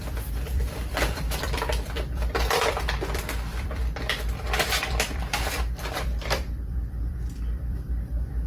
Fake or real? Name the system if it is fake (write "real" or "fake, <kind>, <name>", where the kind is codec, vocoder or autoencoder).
fake, vocoder, BigVGAN v2